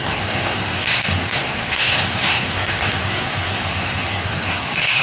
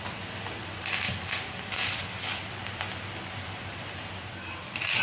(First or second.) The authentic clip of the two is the second